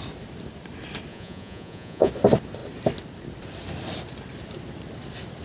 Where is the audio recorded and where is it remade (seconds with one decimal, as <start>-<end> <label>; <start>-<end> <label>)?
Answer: 0.0-1.1 recorded; 1.1-2.1 remade; 2.1-5.4 recorded